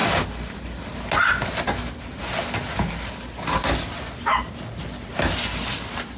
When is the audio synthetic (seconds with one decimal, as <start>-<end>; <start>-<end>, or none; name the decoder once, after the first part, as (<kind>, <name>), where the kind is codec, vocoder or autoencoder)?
none